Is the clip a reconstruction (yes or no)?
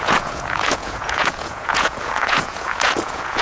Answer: yes